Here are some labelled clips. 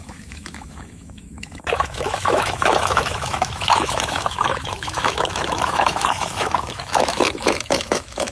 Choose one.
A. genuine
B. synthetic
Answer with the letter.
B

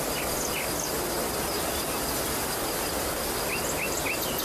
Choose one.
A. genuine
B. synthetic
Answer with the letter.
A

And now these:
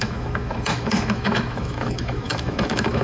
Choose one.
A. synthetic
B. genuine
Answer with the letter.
A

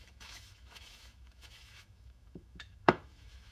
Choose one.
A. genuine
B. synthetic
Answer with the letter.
B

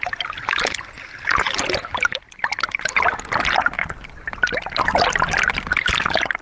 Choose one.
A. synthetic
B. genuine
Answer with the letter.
B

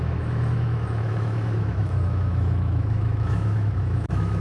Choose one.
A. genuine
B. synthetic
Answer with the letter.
B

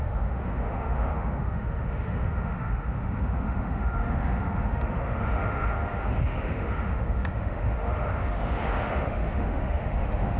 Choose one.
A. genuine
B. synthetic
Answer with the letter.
B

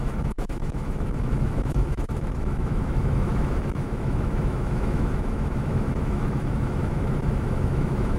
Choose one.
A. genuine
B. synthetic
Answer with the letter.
B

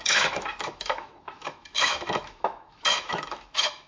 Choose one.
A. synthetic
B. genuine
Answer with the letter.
A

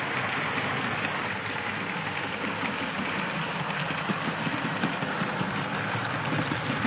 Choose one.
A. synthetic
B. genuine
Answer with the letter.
B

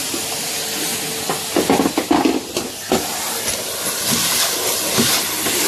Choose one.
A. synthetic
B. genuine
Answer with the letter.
B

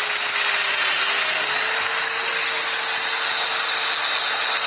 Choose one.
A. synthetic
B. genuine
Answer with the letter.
B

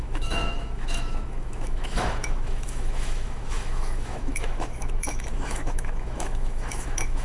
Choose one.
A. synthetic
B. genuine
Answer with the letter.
A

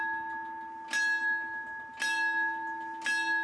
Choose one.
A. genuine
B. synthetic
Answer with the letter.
A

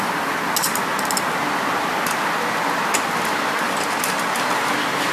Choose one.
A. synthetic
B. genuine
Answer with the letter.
B